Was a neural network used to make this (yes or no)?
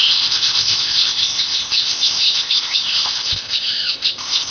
yes